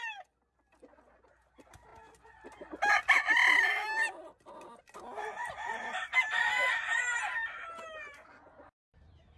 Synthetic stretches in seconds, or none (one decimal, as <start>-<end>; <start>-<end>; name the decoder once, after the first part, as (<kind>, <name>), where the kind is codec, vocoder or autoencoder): 5.4-7.3 (vocoder, BigVGAN v2)